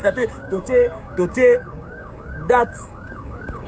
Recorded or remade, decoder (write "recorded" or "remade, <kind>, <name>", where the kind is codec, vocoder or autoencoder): remade, codec, DAC